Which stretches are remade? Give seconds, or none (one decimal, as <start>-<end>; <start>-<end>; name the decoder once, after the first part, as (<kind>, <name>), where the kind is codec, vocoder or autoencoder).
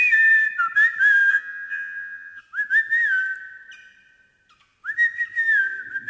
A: 1.3-2.4 (vocoder, HiFi-GAN)